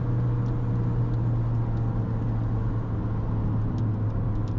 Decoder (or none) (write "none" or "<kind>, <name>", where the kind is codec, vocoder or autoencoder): none